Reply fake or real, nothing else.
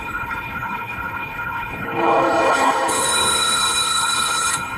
fake